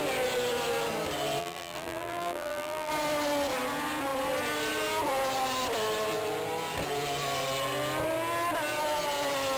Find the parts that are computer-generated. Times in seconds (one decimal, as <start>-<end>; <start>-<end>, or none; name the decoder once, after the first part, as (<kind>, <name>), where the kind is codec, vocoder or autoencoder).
1.4-2.9 (vocoder, BigVGAN v2)